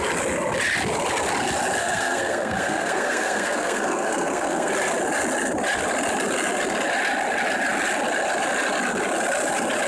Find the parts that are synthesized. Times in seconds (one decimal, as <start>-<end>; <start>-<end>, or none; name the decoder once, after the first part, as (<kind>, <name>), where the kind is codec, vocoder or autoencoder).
1.8-4.7 (codec, SNAC)